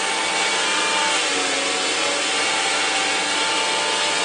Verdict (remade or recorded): recorded